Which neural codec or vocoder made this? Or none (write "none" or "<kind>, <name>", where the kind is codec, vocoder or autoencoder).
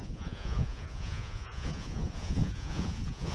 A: vocoder, Vocos